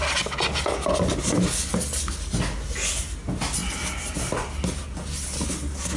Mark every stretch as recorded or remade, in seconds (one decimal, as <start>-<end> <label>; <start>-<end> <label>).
0.0-6.0 recorded